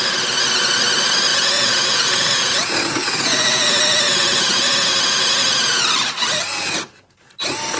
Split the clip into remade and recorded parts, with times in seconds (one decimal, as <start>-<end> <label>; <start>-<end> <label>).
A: 0.0-1.3 recorded; 1.3-5.8 remade; 5.8-7.8 recorded